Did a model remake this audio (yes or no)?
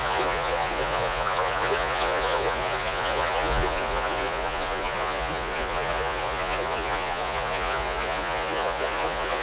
yes